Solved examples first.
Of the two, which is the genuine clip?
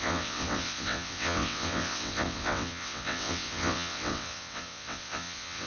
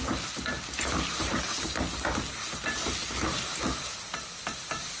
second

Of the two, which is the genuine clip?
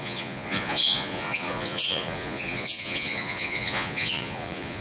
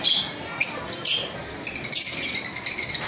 second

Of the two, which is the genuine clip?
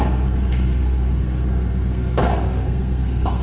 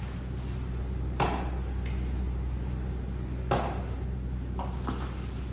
second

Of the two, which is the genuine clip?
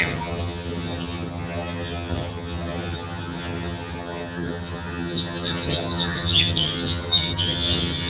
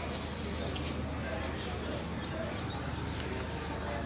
second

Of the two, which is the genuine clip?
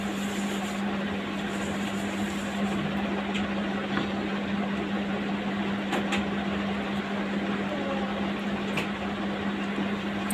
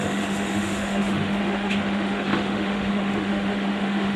first